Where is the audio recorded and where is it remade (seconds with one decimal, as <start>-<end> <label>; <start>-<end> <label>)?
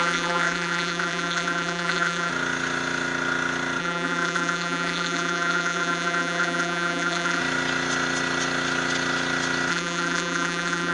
0.0-2.3 remade; 2.3-3.8 recorded; 3.8-7.4 remade; 7.4-9.7 recorded; 9.7-10.9 remade